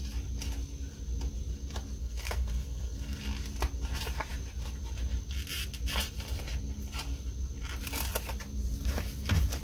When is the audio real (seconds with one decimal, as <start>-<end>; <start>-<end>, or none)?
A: 0.0-2.0; 3.2-9.6